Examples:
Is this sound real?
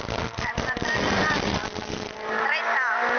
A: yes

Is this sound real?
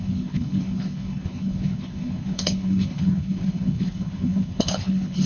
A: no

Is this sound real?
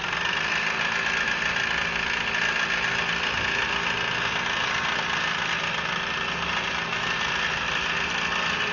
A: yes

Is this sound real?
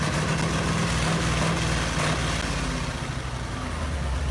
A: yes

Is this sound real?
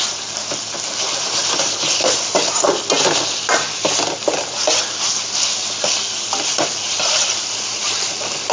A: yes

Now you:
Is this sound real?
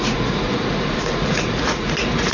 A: no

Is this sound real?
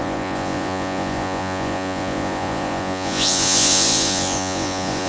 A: no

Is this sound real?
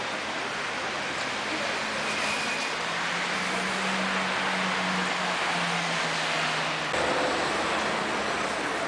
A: yes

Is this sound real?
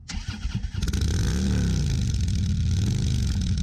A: yes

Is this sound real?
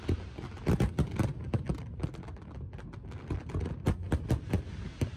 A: yes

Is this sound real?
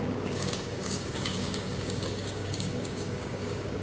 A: no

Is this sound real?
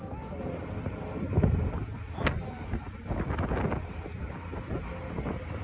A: yes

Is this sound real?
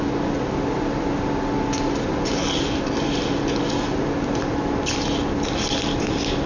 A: yes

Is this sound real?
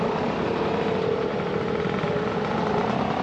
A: no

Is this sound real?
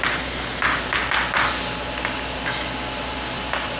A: yes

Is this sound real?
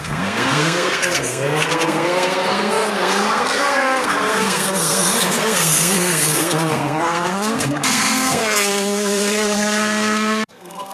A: no